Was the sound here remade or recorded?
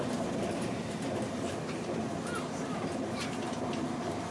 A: remade